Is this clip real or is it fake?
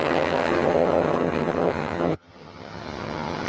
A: fake